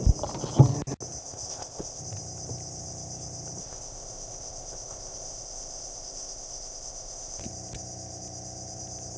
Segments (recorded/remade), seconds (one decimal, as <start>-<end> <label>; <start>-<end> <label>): 0.0-1.2 recorded; 1.2-2.0 remade; 2.0-3.6 recorded; 3.6-7.4 remade; 7.4-9.2 recorded